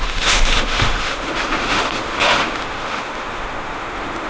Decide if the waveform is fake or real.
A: fake